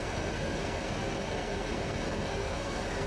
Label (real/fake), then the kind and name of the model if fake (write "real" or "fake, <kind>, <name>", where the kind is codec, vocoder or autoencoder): fake, codec, SNAC